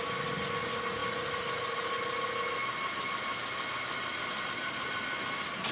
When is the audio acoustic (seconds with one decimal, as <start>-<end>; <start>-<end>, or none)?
0.0-5.7